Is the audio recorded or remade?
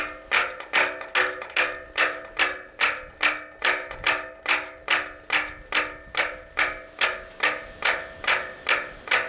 recorded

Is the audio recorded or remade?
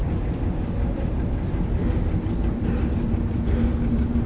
recorded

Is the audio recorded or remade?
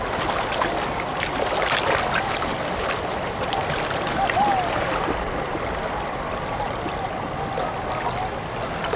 recorded